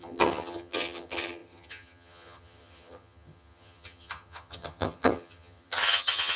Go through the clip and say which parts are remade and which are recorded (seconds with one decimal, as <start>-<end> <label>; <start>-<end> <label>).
0.0-6.4 remade